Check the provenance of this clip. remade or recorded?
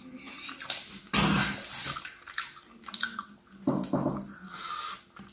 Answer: recorded